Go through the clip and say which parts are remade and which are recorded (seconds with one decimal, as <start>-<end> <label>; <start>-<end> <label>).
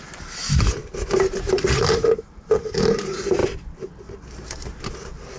0.0-0.8 remade; 0.8-1.4 recorded; 1.4-5.4 remade